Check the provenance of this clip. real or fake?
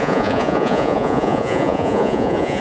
fake